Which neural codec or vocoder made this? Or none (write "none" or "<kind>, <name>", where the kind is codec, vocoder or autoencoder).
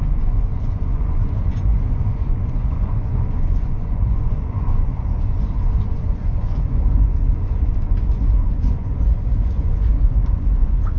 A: vocoder, Vocos